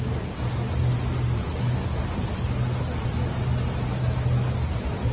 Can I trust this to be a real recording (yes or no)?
yes